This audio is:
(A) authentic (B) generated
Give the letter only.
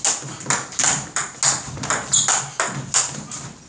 A